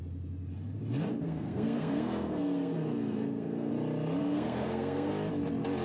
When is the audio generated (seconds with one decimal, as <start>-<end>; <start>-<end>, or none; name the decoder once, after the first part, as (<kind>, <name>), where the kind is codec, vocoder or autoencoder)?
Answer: 1.1-3.7 (codec, SNAC); 4.2-5.1